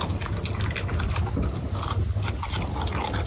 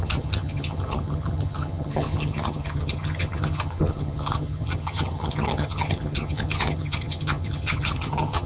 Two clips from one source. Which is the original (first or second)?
first